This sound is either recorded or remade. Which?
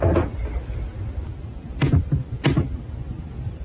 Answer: recorded